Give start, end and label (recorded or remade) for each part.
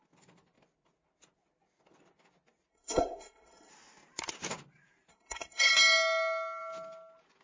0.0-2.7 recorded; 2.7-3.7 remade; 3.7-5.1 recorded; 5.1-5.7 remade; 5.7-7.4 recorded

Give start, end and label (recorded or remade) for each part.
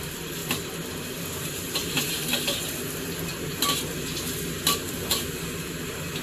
0.0-6.2 recorded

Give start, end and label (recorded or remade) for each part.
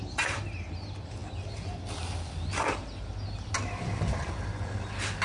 0.0-5.2 recorded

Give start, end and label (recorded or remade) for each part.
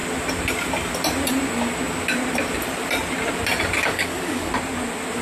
0.0-3.8 recorded; 3.8-4.5 remade; 4.5-5.2 recorded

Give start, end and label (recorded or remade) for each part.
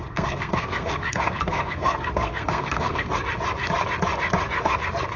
0.0-3.1 remade; 3.1-5.2 recorded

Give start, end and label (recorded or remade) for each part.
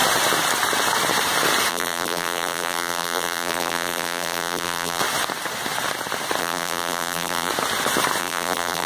0.0-1.7 recorded; 1.7-5.0 remade; 5.0-6.4 recorded; 6.4-7.5 remade; 7.5-8.2 recorded; 8.2-8.9 remade